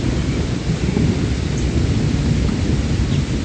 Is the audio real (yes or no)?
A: yes